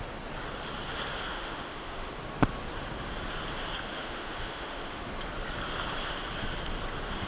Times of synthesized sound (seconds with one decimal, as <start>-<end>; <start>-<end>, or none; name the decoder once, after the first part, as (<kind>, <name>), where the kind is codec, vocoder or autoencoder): 1.3-2.1 (autoencoder, DAC-VAE); 3.9-5.1